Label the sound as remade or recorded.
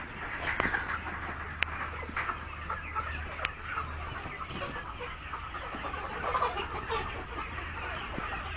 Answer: recorded